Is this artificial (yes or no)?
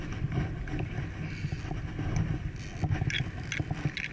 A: no